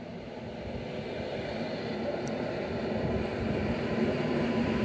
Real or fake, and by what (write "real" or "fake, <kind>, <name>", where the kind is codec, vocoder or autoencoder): real